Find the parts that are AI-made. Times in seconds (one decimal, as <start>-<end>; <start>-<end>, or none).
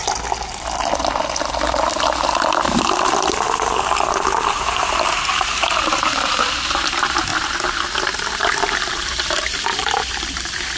4.5-7.3; 8.6-10.8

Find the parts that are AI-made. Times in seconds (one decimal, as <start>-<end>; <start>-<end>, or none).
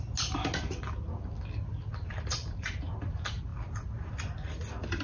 1.9-2.7; 3.5-4.1